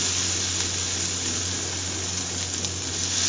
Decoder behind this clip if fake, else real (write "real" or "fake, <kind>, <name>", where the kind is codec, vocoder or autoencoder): real